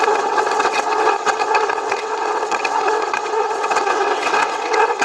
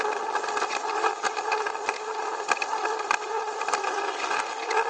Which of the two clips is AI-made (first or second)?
first